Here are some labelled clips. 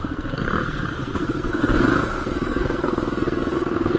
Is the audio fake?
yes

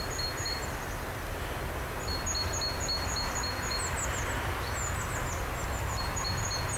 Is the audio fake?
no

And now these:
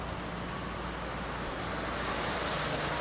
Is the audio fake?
no